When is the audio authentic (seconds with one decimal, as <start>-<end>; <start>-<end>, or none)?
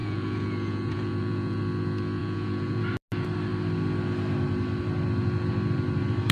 1.6-2.2; 2.8-6.3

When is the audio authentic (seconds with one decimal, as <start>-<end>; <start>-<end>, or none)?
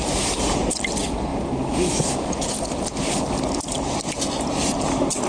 0.0-5.3